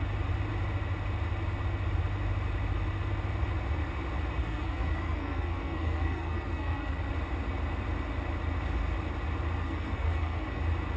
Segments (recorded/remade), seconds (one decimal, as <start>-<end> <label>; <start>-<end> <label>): 0.0-4.4 recorded; 4.4-7.1 remade; 7.1-9.6 recorded; 9.6-10.6 remade; 10.6-11.0 recorded